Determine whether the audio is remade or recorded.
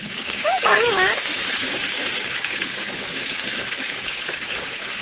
remade